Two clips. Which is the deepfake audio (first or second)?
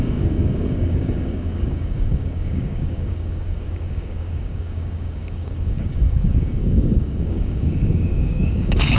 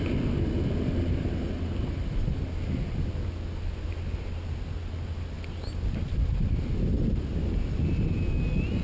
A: first